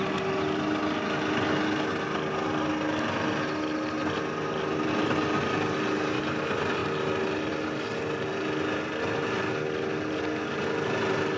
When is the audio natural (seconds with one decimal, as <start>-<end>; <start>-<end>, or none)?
0.0-11.4